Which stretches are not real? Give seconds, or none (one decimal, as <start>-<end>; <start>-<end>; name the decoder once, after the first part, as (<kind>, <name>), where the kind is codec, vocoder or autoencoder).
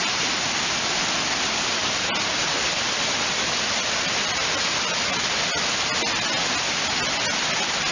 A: none